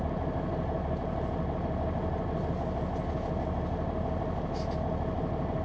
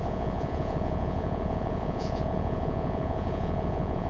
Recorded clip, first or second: first